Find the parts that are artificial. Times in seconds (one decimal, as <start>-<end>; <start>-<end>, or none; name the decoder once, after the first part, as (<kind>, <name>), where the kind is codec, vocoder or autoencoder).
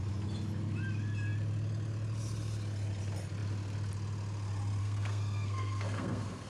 4.8-6.5 (codec, SNAC)